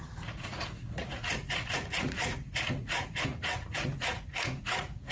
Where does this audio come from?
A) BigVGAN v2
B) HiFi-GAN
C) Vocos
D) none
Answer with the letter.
C